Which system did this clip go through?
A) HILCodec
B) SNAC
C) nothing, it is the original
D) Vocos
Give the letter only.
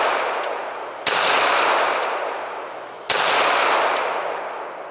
C